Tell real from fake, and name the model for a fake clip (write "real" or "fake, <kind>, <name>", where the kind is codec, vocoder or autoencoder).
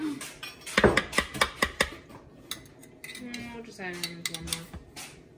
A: real